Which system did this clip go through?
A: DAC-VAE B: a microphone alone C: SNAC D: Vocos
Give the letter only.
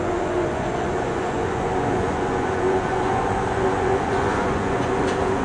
D